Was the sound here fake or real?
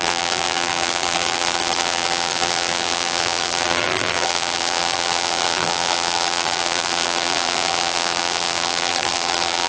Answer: fake